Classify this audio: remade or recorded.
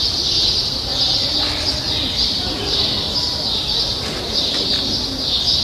recorded